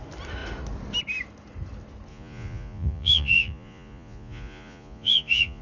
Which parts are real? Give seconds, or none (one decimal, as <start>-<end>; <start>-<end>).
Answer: 0.0-2.1